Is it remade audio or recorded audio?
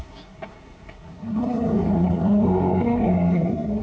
remade